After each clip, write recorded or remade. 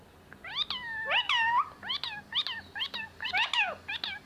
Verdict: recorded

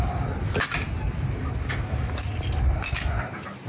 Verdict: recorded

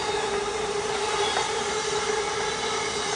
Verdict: recorded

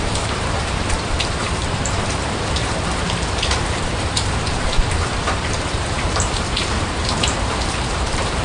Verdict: remade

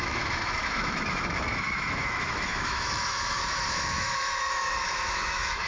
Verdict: remade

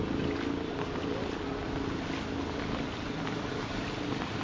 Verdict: recorded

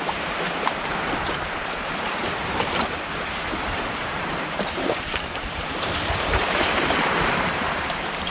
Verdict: remade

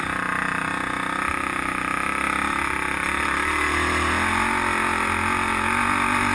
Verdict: recorded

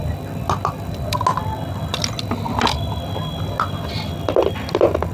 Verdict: recorded